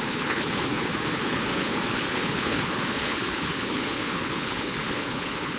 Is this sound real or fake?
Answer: fake